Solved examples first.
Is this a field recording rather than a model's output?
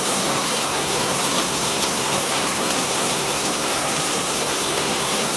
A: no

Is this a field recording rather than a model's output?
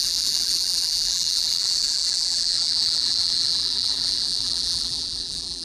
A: no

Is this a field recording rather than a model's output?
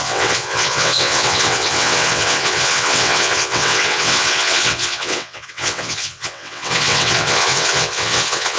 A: no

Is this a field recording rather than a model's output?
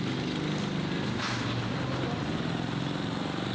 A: yes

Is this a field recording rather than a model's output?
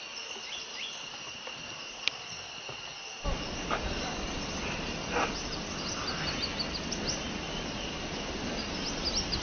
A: yes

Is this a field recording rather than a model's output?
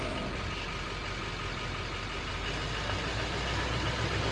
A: yes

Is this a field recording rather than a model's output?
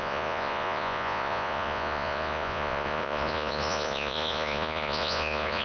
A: no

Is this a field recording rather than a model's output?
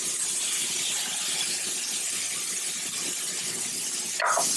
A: yes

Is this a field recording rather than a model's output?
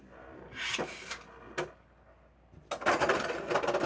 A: yes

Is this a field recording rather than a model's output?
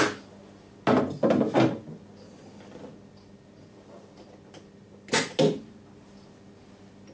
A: yes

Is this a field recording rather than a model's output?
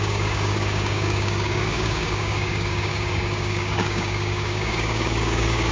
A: no